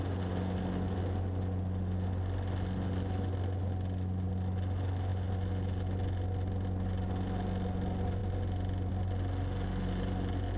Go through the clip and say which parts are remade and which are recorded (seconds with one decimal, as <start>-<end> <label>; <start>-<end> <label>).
0.0-10.6 recorded